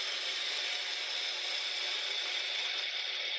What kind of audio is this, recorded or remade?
recorded